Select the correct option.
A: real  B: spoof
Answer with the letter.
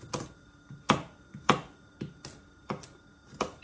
A